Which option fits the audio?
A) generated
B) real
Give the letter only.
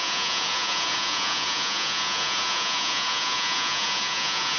A